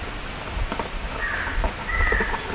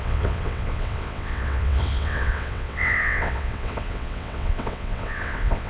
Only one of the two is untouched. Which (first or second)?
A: first